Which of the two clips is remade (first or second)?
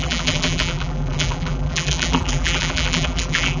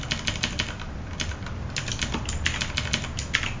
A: first